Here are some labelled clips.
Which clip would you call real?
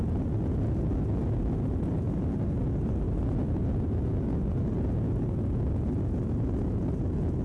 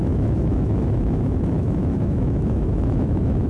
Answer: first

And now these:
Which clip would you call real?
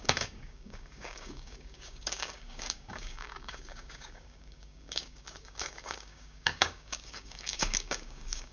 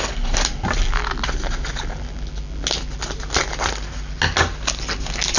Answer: second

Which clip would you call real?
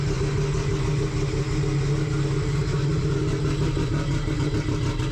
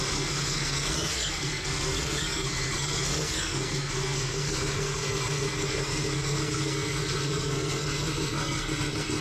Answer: first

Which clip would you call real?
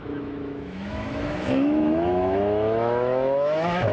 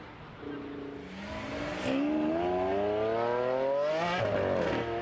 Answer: second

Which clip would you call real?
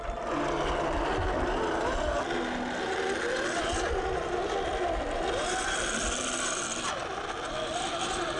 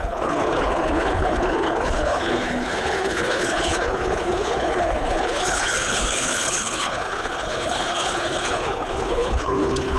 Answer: first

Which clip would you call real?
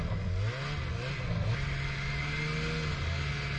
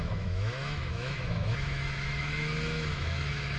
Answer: first